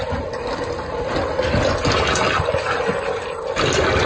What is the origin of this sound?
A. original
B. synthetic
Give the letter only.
A